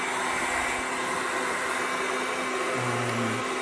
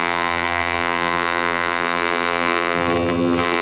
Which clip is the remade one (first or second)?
second